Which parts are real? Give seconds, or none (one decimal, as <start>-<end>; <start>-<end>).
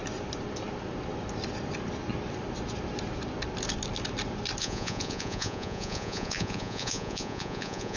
0.0-4.6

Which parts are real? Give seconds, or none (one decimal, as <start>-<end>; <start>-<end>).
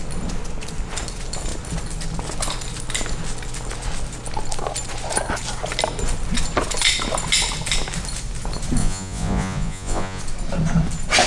0.0-8.8; 10.2-11.3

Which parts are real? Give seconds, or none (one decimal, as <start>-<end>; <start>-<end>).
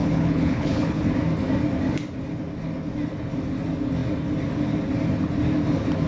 1.0-6.1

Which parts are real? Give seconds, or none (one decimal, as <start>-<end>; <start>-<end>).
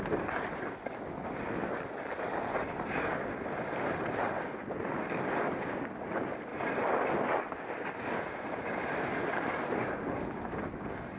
0.0-11.2